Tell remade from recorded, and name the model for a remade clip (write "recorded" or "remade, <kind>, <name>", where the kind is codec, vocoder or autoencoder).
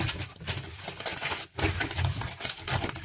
recorded